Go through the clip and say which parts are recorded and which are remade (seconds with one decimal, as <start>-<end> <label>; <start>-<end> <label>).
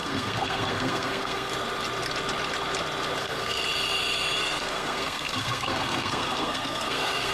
0.0-1.5 remade; 1.5-3.2 recorded; 3.2-3.6 remade; 3.6-4.4 recorded; 4.4-7.3 remade